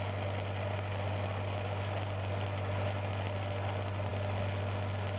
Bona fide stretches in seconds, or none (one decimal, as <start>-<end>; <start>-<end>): 0.0-5.2